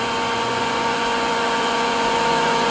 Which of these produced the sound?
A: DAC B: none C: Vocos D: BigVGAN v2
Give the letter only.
C